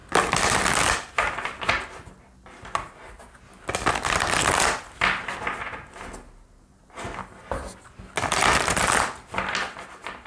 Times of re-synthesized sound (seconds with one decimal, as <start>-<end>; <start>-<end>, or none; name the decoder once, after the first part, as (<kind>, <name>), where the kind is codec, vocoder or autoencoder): none